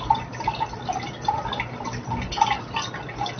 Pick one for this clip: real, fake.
real